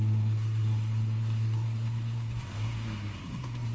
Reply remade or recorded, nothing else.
remade